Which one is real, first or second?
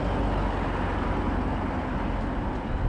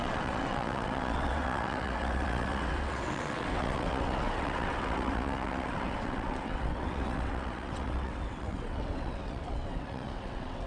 first